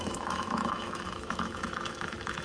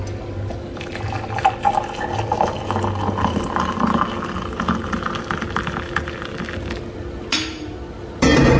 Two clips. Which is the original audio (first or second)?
second